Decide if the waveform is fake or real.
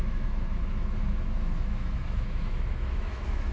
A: fake